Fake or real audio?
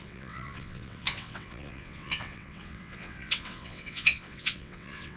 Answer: fake